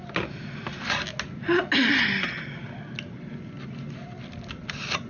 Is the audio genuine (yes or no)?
yes